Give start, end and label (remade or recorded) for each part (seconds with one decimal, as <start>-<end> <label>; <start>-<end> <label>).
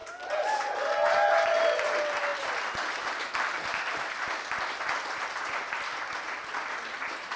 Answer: 0.0-7.4 recorded